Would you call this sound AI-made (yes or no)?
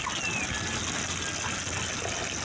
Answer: no